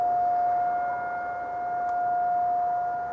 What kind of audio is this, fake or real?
real